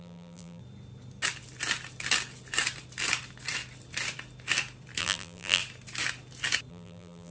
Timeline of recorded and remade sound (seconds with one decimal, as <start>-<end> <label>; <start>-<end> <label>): 0.0-0.6 remade; 0.6-5.0 recorded; 5.0-5.6 remade; 5.6-6.7 recorded; 6.7-7.3 remade